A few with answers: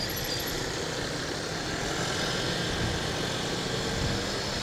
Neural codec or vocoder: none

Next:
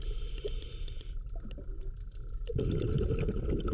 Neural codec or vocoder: none